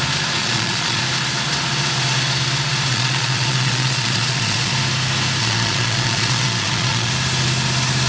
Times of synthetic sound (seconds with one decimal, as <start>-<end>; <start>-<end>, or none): 0.4-1.0; 2.9-4.7; 5.4-7.1